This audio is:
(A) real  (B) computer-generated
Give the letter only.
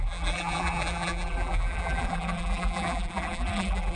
B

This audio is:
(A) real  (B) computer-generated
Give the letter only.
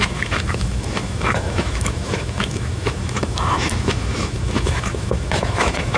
B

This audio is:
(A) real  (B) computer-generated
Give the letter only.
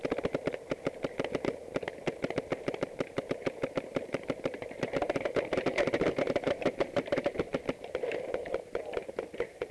B